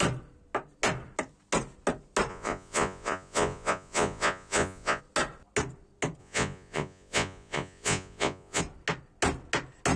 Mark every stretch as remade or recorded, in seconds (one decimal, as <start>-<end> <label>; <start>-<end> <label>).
0.0-2.3 recorded; 2.3-5.0 remade; 5.0-6.2 recorded; 6.2-8.6 remade; 8.6-10.0 recorded